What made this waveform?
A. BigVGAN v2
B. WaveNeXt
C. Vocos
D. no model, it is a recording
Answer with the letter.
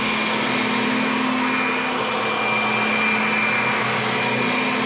D